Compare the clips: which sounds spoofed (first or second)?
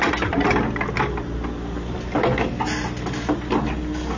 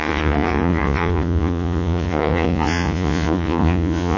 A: second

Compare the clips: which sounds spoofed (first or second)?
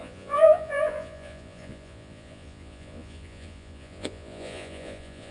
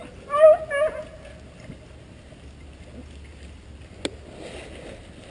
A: first